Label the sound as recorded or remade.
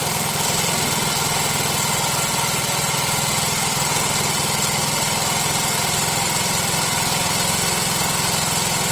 recorded